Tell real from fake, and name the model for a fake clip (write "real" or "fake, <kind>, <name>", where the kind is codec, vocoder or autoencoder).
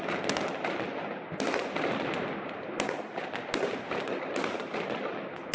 real